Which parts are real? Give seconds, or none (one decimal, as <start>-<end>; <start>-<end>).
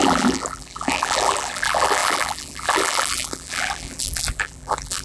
none